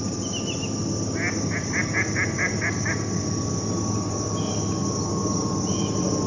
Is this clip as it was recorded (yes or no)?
yes